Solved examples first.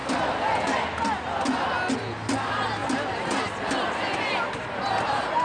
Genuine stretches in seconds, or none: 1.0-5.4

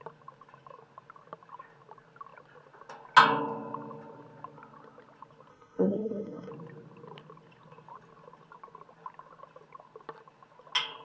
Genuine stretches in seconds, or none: 0.0-5.5; 6.5-11.0